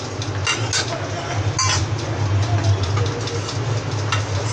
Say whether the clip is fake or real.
real